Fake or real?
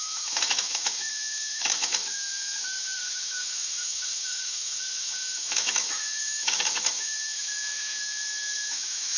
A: fake